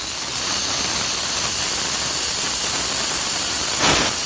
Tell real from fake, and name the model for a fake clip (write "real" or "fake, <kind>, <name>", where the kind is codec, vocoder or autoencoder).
real